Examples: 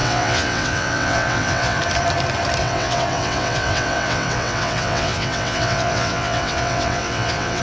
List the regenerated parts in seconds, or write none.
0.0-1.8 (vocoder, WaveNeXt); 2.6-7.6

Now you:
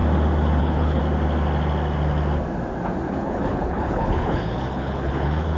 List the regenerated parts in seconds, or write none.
0.6-1.0 (codec, HILCodec); 3.1-5.6

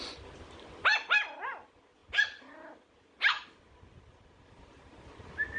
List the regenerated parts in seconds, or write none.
none

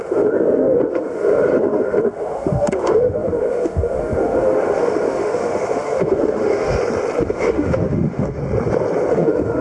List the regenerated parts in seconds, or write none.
0.0-6.8 (autoencoder, DAC-VAE); 7.3-8.4; 9.1-9.6